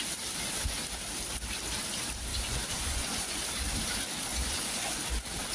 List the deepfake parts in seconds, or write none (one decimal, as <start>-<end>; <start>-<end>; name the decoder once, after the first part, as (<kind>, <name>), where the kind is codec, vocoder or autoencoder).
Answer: 2.3-3.4 (vocoder, Vocos); 4.3-5.0